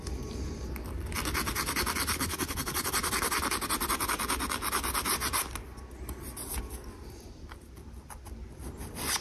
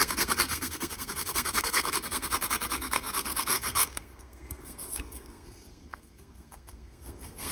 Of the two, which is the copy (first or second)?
second